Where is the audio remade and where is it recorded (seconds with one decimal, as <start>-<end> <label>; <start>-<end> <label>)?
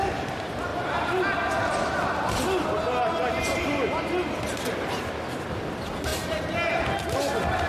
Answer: 0.0-6.1 recorded; 6.1-6.9 remade; 6.9-7.7 recorded